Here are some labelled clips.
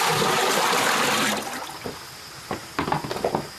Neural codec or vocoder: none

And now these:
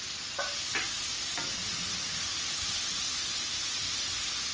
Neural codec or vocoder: none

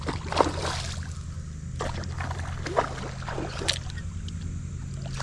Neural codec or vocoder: none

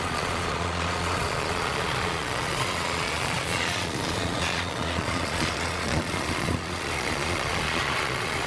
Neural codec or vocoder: vocoder, Vocos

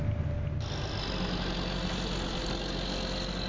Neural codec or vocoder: none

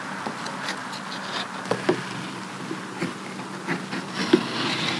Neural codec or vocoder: none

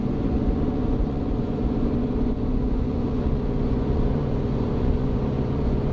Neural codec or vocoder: vocoder, Vocos